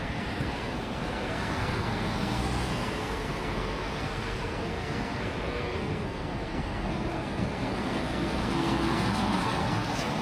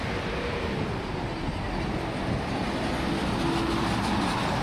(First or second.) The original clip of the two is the second